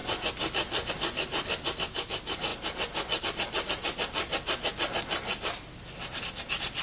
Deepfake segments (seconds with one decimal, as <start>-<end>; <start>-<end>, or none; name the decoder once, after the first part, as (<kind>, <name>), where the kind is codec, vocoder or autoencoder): none